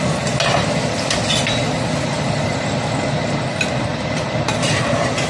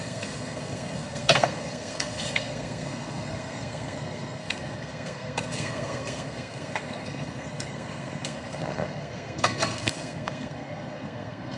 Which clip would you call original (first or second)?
first